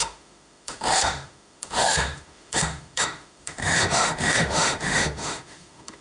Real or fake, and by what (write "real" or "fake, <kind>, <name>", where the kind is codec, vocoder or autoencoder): fake, autoencoder, DAC-VAE